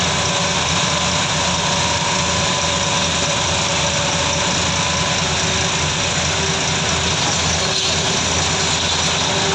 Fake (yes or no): no